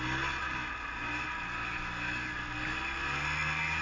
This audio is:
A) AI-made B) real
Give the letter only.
B